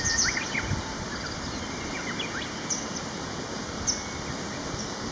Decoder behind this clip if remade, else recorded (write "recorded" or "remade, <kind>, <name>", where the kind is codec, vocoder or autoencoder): remade, vocoder, BigVGAN v2